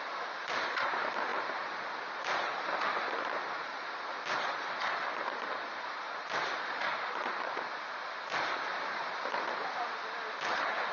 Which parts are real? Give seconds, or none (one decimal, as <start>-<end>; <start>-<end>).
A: 0.0-10.9